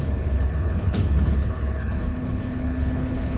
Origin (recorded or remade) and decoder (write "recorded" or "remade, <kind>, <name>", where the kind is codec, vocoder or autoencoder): remade, codec, HILCodec